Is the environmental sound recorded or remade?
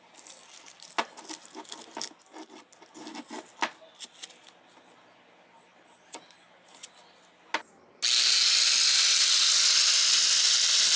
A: recorded